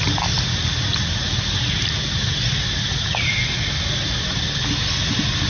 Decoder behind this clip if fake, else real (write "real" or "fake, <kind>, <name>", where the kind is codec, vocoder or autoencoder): real